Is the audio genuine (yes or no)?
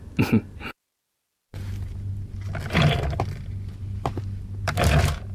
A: yes